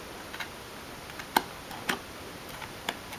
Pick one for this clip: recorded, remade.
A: recorded